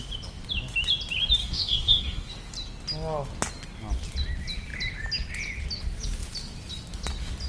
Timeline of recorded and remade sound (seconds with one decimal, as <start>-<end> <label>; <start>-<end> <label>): 0.0-1.4 recorded; 1.4-2.3 remade; 2.3-7.5 recorded

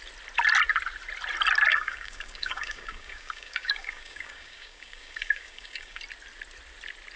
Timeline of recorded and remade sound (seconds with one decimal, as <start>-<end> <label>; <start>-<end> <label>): 0.0-1.7 recorded; 1.7-6.0 remade; 6.0-7.2 recorded

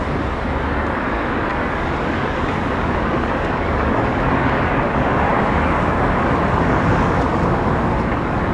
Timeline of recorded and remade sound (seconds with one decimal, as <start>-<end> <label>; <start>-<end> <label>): 0.0-8.5 remade

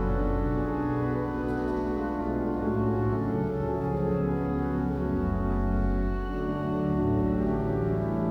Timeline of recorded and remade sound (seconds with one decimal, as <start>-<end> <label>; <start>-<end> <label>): 0.0-2.2 recorded; 2.2-7.0 remade; 7.0-8.3 recorded

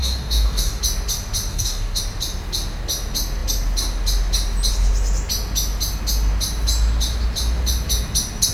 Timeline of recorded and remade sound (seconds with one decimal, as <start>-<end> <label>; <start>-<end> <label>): 0.0-0.8 remade; 0.8-1.5 recorded; 1.5-2.0 remade; 2.0-8.5 recorded

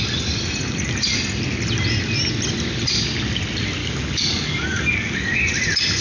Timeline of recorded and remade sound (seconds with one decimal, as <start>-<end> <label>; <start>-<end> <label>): 0.0-3.8 recorded; 3.8-5.4 remade; 5.4-6.0 recorded